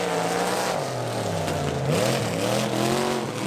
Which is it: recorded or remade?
recorded